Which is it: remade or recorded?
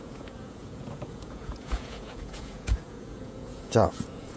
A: remade